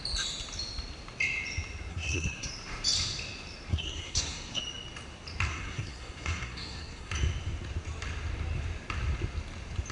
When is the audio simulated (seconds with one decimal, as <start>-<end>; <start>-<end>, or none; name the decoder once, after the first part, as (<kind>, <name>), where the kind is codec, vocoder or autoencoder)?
1.9-2.5 (codec, SNAC); 3.7-4.6; 5.5-7.1